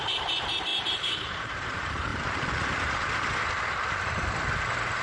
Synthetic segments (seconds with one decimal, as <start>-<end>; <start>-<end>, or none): 0.0-2.1